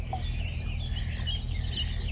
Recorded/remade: recorded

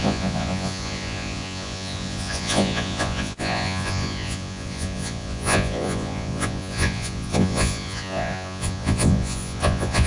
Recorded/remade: remade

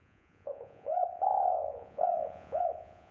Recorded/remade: remade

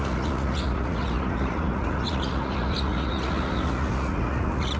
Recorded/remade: remade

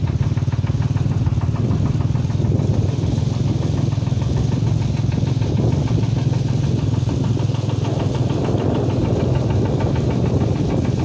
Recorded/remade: recorded